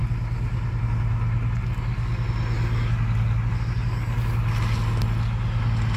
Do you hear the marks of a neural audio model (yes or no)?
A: no